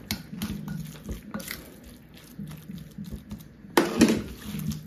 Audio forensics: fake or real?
real